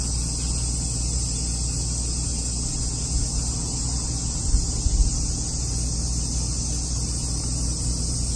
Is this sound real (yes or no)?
yes